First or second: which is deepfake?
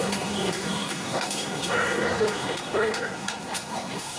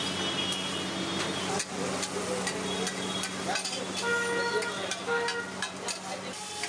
first